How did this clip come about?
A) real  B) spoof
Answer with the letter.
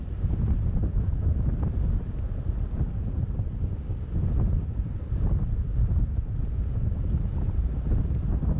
A